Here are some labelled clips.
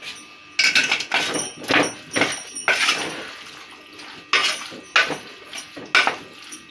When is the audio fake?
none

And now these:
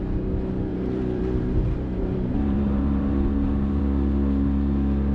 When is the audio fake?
0.7-3.8 (vocoder, BigVGAN v2)

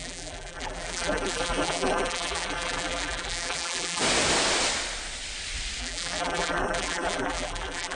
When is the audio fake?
0.0-4.0 (vocoder, BigVGAN v2); 5.8-8.0

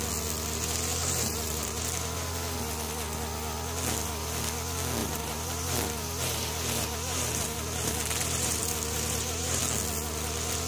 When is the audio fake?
1.0-1.8 (vocoder, BigVGAN v2); 5.0-9.6

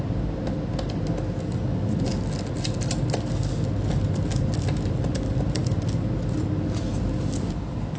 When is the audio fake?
none

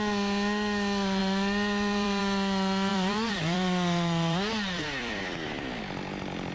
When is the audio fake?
1.2-2.2 (vocoder, BigVGAN v2); 2.9-5.8

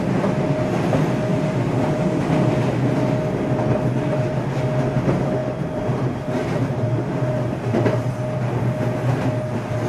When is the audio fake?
1.3-2.2 (vocoder, BigVGAN v2); 5.4-8.1